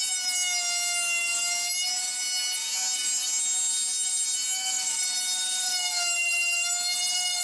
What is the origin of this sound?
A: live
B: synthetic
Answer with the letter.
A